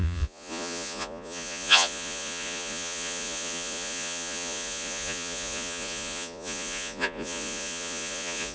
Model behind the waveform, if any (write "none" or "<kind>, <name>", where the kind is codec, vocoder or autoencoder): vocoder, Vocos